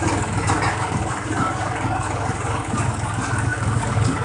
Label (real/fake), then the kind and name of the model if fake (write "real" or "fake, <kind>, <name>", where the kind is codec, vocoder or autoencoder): fake, codec, DAC